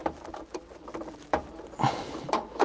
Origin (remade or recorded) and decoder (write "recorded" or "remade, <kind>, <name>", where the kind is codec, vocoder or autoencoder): recorded